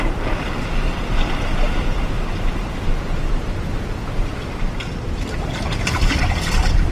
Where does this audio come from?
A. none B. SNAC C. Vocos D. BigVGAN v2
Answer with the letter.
A